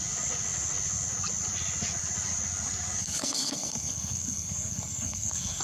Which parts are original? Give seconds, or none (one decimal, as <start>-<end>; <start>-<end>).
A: 0.0-3.0